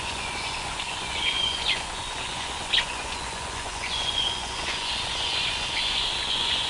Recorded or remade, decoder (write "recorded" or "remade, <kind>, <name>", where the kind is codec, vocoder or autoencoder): remade, vocoder, Vocos